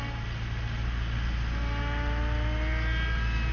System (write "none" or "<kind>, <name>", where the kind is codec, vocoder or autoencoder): none